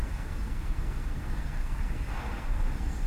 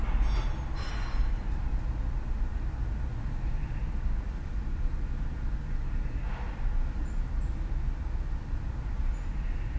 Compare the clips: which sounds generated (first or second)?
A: first